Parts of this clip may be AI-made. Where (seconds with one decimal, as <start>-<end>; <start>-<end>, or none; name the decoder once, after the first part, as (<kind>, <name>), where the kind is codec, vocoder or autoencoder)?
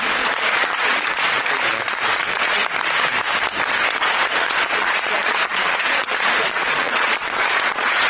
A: 0.0-2.6 (vocoder, Vocos); 3.9-8.1